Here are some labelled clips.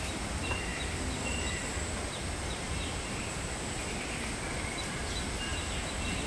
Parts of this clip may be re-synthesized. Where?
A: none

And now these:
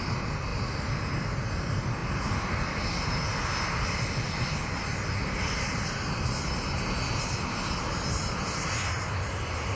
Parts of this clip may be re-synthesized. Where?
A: none

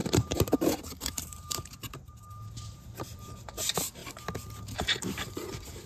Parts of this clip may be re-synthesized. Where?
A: 0.0-4.0 (vocoder, BigVGAN v2); 4.6-5.9

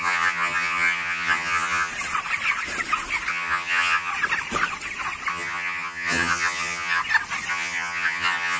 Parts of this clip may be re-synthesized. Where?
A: 0.0-1.9 (vocoder, HiFi-GAN); 3.3-4.1; 5.3-7.0; 7.5-8.6

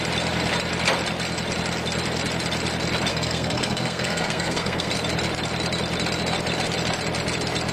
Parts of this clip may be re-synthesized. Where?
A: 3.1-4.9 (codec, SNAC)